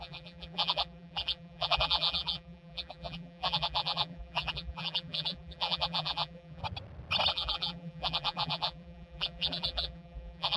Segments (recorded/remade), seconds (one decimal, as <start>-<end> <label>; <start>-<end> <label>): 0.0-6.6 remade; 6.6-7.3 recorded; 7.3-10.6 remade